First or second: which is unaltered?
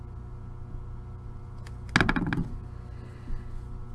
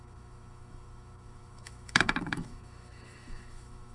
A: first